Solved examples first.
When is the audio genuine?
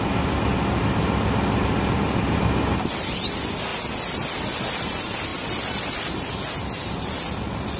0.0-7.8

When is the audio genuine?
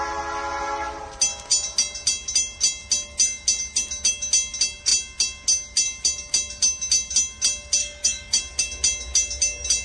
0.0-7.8; 8.4-9.8